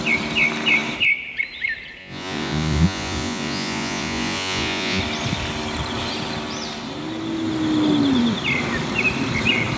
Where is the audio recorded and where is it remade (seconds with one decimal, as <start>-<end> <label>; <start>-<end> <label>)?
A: 0.0-2.0 recorded; 2.0-5.0 remade; 5.0-9.8 recorded